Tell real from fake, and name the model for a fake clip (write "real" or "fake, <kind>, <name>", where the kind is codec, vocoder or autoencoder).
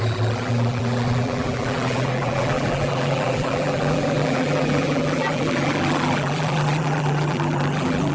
fake, vocoder, BigVGAN v2